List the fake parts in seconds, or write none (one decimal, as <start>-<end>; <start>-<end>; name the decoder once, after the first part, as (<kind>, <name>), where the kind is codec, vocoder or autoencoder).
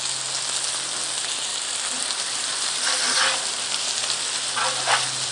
1.5-3.8 (vocoder, BigVGAN v2)